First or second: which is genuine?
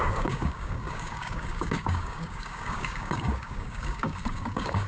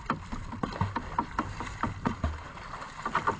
second